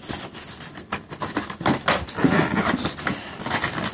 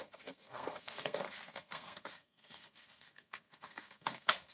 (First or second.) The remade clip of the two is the second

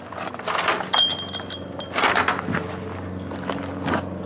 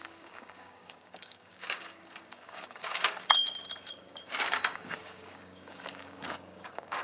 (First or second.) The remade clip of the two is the second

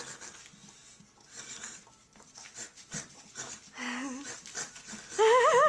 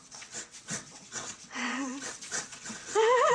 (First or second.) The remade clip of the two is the second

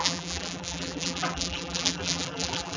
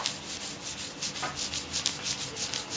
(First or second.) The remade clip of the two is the first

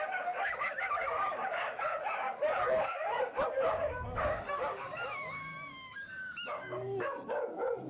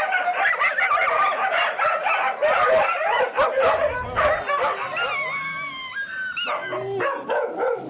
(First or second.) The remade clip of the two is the first